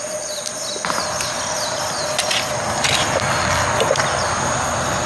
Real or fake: real